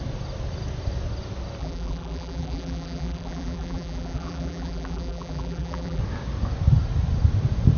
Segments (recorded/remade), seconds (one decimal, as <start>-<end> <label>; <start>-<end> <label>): 0.0-1.6 recorded; 1.6-6.0 remade; 6.0-7.8 recorded